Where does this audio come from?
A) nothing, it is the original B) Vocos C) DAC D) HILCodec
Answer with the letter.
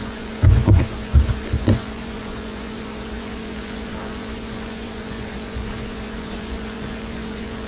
B